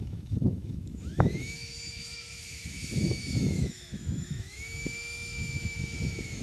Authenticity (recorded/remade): remade